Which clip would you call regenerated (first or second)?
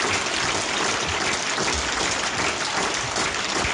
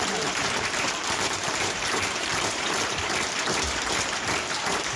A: second